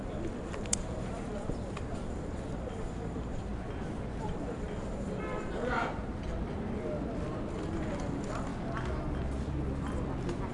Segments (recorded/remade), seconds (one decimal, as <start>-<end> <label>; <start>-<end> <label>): 0.0-3.5 remade; 3.5-4.2 recorded; 4.2-5.8 remade; 5.8-7.5 recorded; 7.5-8.5 remade; 8.5-10.5 recorded